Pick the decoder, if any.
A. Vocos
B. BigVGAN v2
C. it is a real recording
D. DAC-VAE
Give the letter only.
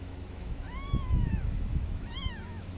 D